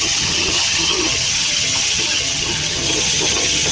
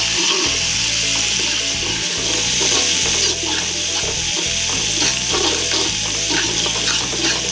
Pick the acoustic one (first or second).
second